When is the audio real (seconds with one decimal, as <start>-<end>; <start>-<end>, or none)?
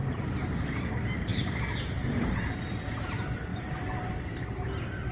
0.0-1.3; 2.3-3.5; 4.1-5.1